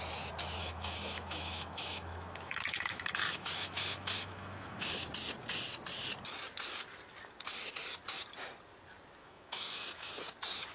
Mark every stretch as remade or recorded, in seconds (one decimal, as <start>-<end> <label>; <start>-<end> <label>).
0.0-0.6 recorded; 0.6-5.1 remade; 5.1-9.2 recorded; 9.2-10.1 remade; 10.1-10.7 recorded